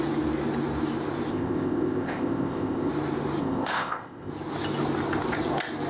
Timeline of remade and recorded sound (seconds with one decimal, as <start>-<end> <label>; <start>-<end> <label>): 0.0-1.3 recorded; 1.3-2.9 remade; 2.9-3.4 recorded; 3.4-4.3 remade; 4.3-5.9 recorded